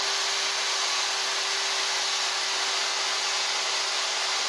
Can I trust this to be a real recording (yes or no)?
yes